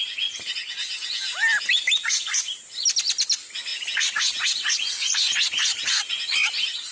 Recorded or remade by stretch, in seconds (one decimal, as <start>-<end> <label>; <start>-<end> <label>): 0.0-6.9 recorded